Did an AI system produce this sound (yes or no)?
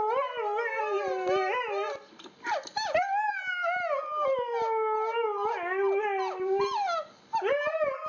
no